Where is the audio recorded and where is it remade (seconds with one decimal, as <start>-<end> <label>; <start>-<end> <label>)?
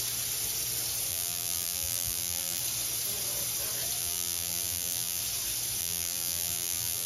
0.0-1.1 recorded; 1.1-2.6 remade; 2.6-4.0 recorded; 4.0-5.2 remade; 5.2-5.8 recorded; 5.8-7.1 remade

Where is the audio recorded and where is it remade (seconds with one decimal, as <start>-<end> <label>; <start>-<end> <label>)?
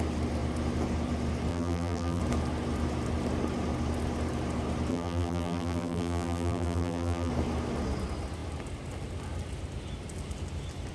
0.0-1.5 recorded; 1.5-2.2 remade; 2.2-4.9 recorded; 4.9-7.3 remade; 7.3-10.9 recorded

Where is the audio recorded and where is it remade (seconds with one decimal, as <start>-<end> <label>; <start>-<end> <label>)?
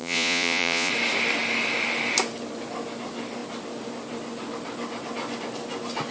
0.0-0.9 remade; 0.9-6.1 recorded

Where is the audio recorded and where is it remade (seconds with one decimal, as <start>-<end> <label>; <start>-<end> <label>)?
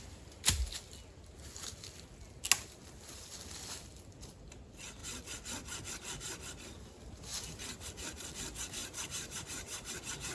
0.0-7.3 recorded; 7.3-7.9 remade; 7.9-8.8 recorded; 8.8-9.9 remade; 9.9-10.3 recorded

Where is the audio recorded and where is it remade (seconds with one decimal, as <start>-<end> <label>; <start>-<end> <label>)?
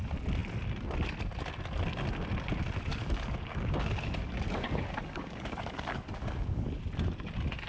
0.0-2.9 recorded; 2.9-6.8 remade; 6.8-7.7 recorded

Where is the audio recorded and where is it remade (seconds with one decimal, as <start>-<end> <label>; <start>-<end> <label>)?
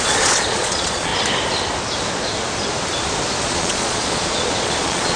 0.0-1.1 remade; 1.1-3.4 recorded; 3.4-5.2 remade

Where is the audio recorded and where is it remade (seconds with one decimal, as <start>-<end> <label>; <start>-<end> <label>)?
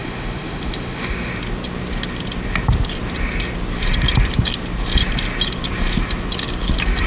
0.0-1.3 remade; 1.3-7.1 recorded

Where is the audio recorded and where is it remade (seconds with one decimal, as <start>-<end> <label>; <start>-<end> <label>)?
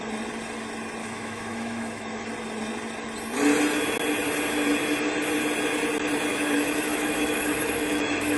0.0-1.0 recorded; 1.0-2.3 remade; 2.3-6.3 recorded; 6.3-8.4 remade